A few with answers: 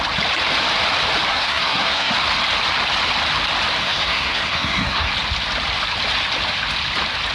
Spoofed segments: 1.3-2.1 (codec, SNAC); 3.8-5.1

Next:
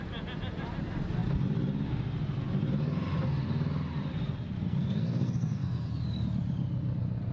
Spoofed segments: 4.6-6.0 (codec, SNAC)

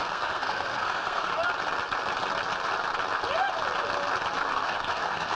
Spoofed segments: 0.0-1.3 (codec, SNAC); 4.5-5.3

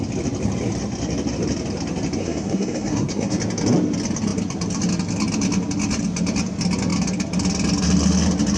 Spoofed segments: 2.2-3.4 (codec, SNAC)

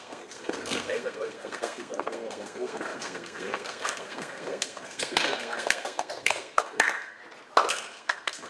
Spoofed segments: 0.0-7.2 (codec, SNAC); 7.7-8.5